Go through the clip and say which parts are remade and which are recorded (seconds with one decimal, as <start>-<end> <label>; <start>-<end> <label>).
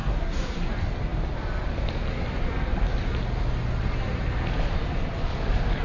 0.0-0.7 remade; 0.7-5.8 recorded